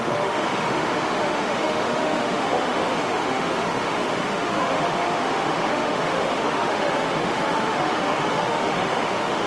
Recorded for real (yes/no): no